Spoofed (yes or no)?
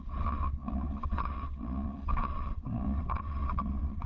yes